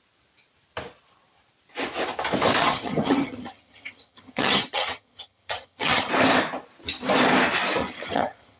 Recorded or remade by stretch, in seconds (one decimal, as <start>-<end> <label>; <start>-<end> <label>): 0.0-2.6 recorded; 2.6-6.1 remade; 6.1-7.8 recorded; 7.8-8.6 remade